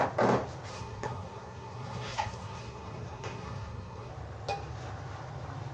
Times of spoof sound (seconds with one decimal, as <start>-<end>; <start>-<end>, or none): 0.7-4.1